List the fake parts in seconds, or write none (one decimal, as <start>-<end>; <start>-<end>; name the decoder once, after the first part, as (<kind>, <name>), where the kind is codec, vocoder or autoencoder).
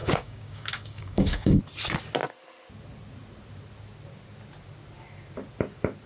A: 0.0-1.6 (codec, DAC)